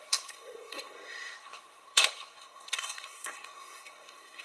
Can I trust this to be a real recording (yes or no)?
no